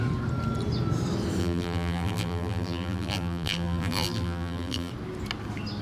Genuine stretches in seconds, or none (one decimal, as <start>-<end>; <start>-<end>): 0.0-1.4; 4.9-5.8